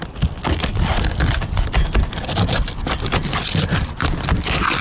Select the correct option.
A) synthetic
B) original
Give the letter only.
B